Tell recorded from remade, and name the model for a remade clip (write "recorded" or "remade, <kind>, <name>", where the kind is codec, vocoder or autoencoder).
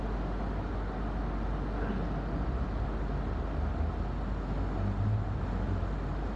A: recorded